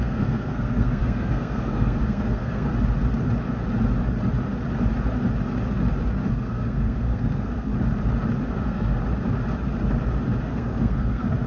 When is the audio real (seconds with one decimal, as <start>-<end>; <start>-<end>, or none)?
2.7-6.3; 7.7-8.5; 9.0-10.4